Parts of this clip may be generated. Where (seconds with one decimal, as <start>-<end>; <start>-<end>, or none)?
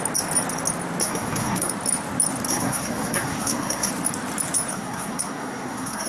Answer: 1.0-1.7; 2.5-3.9; 4.7-6.1